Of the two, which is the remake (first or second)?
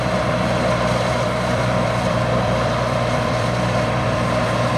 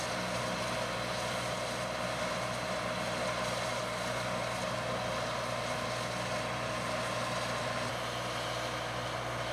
first